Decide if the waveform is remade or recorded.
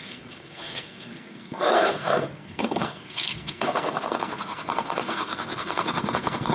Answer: remade